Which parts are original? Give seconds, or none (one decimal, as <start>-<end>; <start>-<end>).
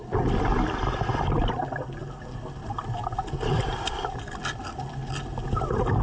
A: 0.0-6.0